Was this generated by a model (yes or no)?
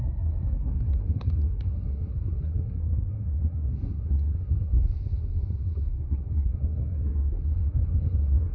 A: yes